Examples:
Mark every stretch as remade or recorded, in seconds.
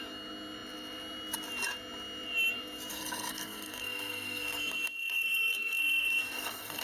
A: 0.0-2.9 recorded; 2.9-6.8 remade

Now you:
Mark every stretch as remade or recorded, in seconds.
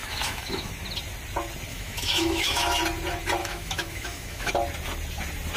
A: 0.0-0.7 remade; 0.7-1.7 recorded; 1.7-2.8 remade; 2.8-3.4 recorded; 3.4-4.5 remade; 4.5-5.6 recorded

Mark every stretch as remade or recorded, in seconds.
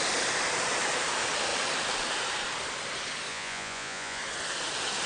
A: 0.0-3.3 recorded; 3.3-4.2 remade; 4.2-5.1 recorded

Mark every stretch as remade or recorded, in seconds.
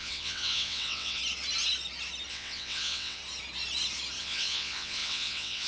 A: 0.0-1.2 remade; 1.2-2.3 recorded; 2.3-3.2 remade; 3.2-4.2 recorded; 4.2-5.7 remade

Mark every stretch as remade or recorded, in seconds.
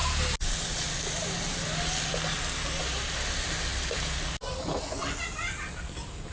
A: 0.0-6.3 recorded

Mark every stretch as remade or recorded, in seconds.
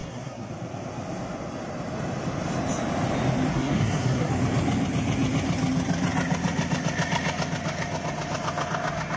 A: 0.0-0.5 remade; 0.5-3.5 recorded; 3.5-4.3 remade; 4.3-9.2 recorded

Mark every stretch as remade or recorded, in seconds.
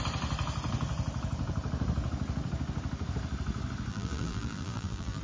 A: 0.0-3.9 recorded; 3.9-5.2 remade